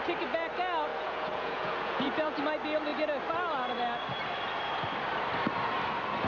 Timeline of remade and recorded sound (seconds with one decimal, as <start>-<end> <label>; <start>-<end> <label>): 0.0-0.9 recorded; 0.9-2.4 remade; 2.4-6.3 recorded